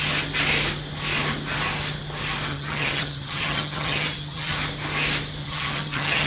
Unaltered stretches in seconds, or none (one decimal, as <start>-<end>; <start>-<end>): 0.0-2.5; 4.5-5.4